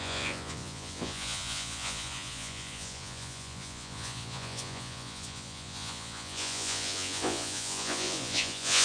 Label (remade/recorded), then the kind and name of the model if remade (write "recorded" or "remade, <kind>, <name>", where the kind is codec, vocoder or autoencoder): remade, vocoder, Vocos